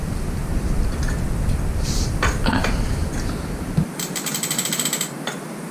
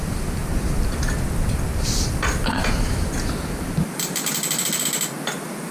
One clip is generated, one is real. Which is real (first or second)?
second